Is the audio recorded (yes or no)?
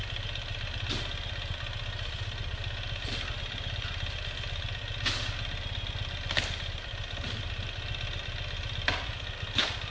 yes